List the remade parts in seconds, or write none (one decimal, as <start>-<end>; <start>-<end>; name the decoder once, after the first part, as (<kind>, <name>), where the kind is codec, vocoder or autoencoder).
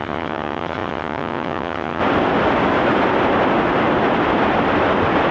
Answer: 0.0-2.0 (vocoder, HiFi-GAN)